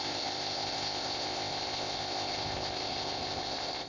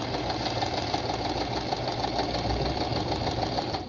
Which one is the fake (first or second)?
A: first